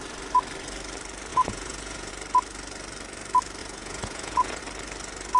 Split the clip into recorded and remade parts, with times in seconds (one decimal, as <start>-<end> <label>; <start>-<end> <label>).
0.0-1.3 recorded; 1.3-2.1 remade; 2.1-3.6 recorded; 3.6-4.6 remade; 4.6-5.4 recorded